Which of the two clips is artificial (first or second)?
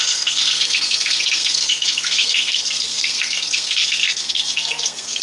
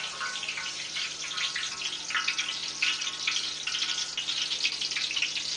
first